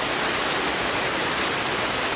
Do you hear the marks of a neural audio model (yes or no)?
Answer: yes